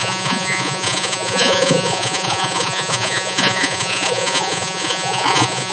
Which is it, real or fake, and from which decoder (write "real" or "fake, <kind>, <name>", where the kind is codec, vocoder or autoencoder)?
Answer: fake, vocoder, Vocos